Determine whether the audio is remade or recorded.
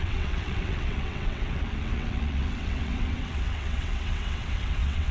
remade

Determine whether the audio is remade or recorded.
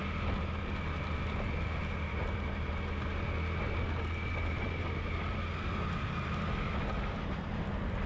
recorded